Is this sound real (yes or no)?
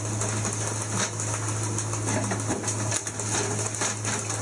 yes